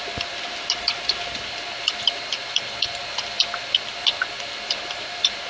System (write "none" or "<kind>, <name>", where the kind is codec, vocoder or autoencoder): none